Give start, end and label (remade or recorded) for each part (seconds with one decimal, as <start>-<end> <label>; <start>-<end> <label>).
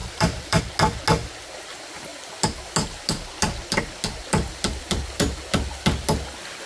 0.0-0.6 remade; 0.6-6.7 recorded